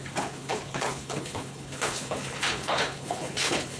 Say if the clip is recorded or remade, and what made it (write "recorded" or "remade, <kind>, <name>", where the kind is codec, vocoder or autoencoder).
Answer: remade, codec, HILCodec